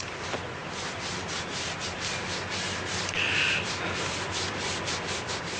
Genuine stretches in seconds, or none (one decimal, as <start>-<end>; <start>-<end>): 0.0-5.6